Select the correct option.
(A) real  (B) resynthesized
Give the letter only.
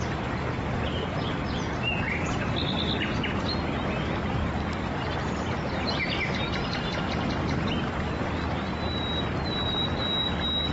A